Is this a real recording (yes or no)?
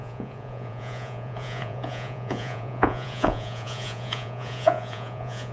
no